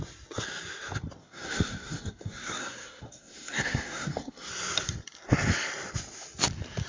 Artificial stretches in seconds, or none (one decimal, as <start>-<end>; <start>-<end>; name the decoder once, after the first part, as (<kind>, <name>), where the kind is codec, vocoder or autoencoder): 1.2-4.5 (codec, SNAC)